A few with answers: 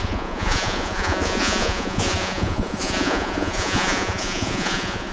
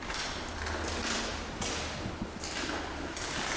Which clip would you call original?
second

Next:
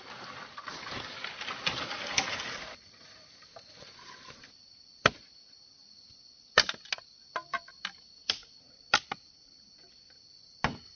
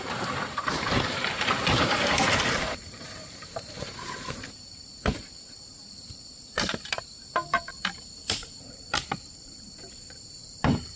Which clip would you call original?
first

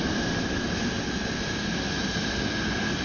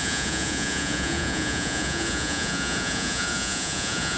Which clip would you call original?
first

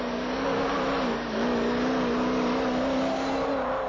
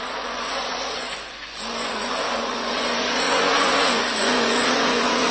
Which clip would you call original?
first